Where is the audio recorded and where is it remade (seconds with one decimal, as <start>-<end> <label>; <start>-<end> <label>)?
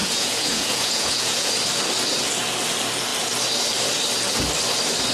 0.0-1.5 remade; 1.5-5.1 recorded